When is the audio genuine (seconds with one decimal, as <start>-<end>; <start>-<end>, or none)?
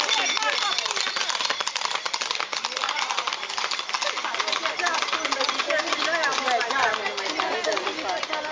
0.0-8.5